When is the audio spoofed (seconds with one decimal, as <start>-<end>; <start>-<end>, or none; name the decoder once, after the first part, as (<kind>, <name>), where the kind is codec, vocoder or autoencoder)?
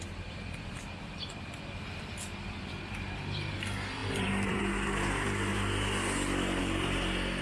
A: 0.0-5.5 (vocoder, BigVGAN v2); 6.6-7.4